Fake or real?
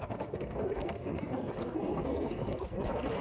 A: fake